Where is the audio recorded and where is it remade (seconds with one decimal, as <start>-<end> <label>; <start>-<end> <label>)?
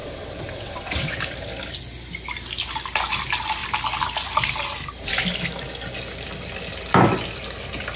0.0-1.2 remade; 1.2-8.0 recorded